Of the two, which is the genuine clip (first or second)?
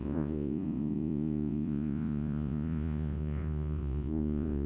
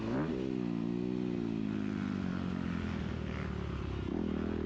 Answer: second